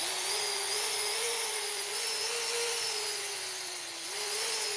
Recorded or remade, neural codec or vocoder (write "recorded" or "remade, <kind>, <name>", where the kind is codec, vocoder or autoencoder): remade, vocoder, Vocos